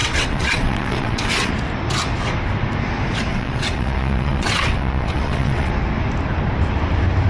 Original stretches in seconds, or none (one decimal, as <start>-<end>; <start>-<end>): 1.5-3.3; 5.7-7.3